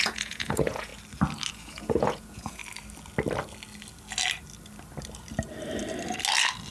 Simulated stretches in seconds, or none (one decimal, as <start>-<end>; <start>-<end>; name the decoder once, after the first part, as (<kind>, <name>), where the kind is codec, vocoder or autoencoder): 0.0-0.9 (vocoder, Vocos); 1.5-2.6